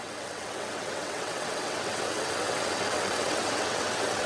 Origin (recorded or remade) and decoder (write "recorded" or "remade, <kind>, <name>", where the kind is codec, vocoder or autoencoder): remade, vocoder, WaveNeXt